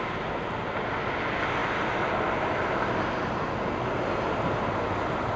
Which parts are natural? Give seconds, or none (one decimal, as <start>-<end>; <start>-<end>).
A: 0.0-5.4